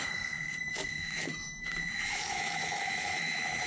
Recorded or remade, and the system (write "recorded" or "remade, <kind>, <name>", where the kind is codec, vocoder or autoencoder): remade, autoencoder, DAC-VAE